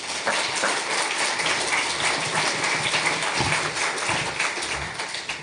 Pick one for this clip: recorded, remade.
recorded